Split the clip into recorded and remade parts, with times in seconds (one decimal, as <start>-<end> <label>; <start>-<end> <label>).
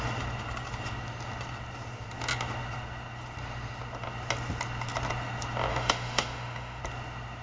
0.0-5.7 recorded; 5.7-6.8 remade; 6.8-7.4 recorded